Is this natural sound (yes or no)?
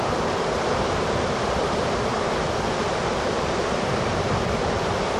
no